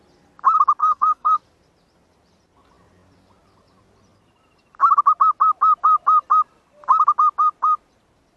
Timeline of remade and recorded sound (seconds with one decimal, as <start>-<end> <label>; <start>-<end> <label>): 0.0-0.8 recorded; 0.8-1.4 remade; 1.4-8.4 recorded